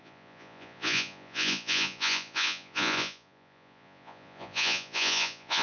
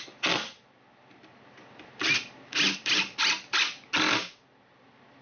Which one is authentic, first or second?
second